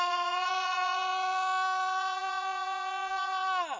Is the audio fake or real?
fake